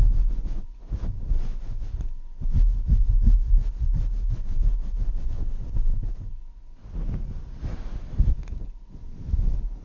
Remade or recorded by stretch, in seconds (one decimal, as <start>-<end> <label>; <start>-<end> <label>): 0.0-9.8 recorded

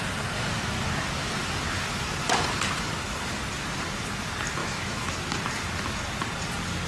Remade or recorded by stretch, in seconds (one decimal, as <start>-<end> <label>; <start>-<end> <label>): 0.0-4.6 recorded; 4.6-5.3 remade; 5.3-6.9 recorded